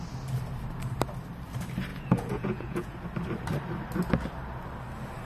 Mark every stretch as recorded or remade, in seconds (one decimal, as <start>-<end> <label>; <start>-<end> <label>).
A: 0.0-1.9 recorded; 1.9-3.0 remade; 3.0-5.2 recorded